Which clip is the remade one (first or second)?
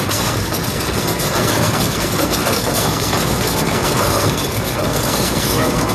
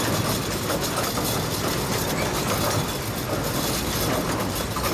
first